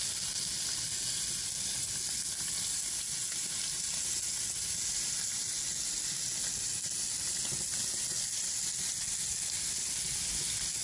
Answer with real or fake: real